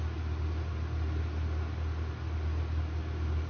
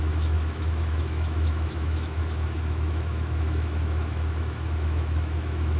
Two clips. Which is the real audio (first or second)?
first